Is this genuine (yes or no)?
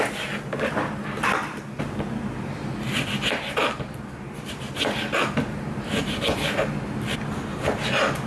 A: yes